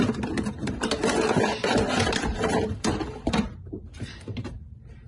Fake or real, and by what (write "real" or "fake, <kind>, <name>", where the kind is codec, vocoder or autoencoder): fake, vocoder, BigVGAN v2